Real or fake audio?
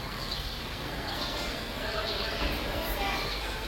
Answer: fake